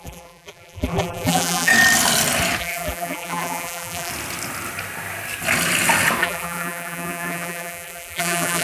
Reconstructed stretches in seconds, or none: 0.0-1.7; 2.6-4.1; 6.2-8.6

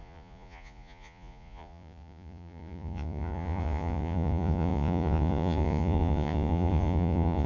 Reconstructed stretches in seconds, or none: 0.0-7.5

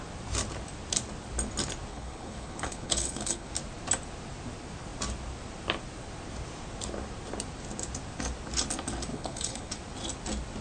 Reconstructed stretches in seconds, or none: 1.9-3.5; 9.1-9.7

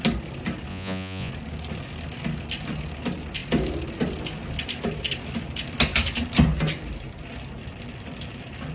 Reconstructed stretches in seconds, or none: 0.7-1.3

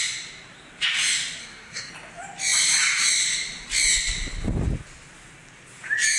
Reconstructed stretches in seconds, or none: 1.4-1.9

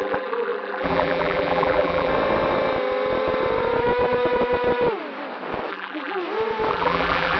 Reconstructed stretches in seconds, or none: 0.0-2.1; 5.7-6.2; 6.7-7.4

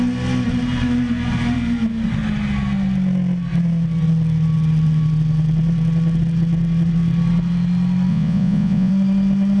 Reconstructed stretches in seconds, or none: 8.1-8.9

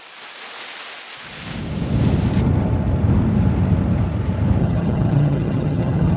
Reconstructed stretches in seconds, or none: 4.6-6.2